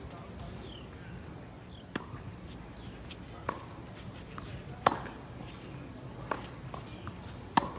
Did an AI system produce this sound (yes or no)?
no